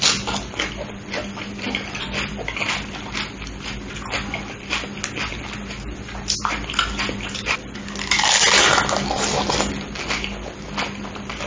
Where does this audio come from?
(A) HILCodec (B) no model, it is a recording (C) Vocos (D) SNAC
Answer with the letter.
B